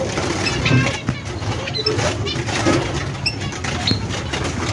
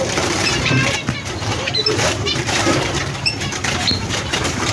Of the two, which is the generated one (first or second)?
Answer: second